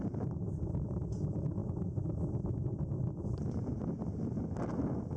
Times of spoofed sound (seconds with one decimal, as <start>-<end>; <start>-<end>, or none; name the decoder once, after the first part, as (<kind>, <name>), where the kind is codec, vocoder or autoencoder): none